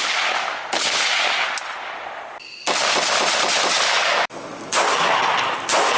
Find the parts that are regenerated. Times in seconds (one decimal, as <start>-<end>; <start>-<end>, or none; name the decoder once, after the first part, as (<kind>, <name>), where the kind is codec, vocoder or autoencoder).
3.2-3.8 (vocoder, BigVGAN v2)